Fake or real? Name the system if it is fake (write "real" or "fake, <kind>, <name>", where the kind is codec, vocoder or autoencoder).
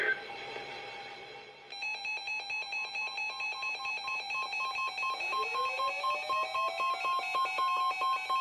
real